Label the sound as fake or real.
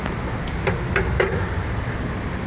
real